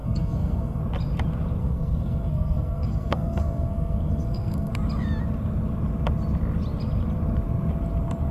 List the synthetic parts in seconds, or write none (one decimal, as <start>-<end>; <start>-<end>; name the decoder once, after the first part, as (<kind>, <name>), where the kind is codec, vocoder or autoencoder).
0.0-0.8 (codec, SNAC); 1.6-4.7